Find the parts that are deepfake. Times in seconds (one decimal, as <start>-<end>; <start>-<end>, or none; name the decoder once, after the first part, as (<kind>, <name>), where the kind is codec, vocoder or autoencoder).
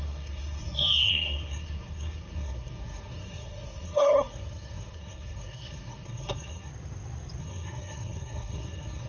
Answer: 0.0-6.7 (codec, SNAC); 7.4-9.1